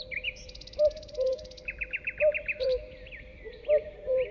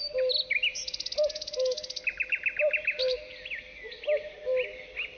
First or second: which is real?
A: second